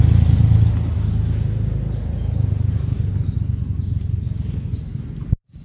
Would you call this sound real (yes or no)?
yes